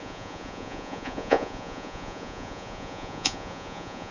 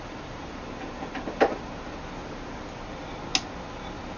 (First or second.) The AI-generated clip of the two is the first